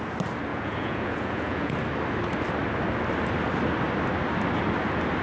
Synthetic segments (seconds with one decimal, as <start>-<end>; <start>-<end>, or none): 0.5-1.7